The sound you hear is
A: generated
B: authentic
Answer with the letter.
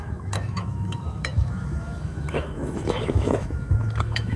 A